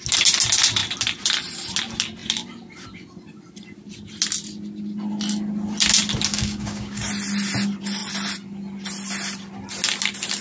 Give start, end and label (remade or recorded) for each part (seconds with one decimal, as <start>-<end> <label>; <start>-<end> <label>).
0.0-6.3 recorded; 6.3-7.1 remade; 7.1-10.4 recorded